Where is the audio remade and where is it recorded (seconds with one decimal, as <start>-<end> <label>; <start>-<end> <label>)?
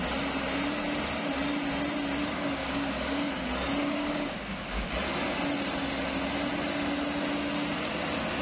0.0-2.2 recorded; 2.2-3.3 remade; 3.3-3.8 recorded; 3.8-4.9 remade; 4.9-8.4 recorded